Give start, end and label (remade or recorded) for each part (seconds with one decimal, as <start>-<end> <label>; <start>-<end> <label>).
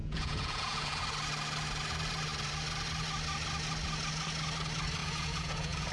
0.0-1.0 remade; 1.0-5.0 recorded; 5.0-5.9 remade